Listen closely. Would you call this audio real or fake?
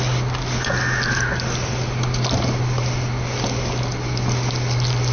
real